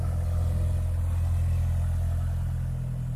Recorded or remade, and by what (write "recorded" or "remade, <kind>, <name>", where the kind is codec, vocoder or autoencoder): recorded